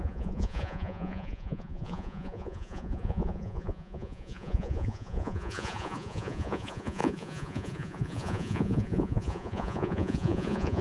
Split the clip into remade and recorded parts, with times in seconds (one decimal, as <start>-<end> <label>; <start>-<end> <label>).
0.0-10.8 remade